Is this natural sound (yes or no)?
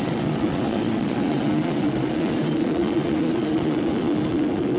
no